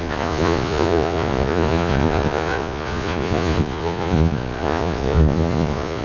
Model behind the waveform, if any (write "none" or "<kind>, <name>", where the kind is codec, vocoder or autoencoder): vocoder, Vocos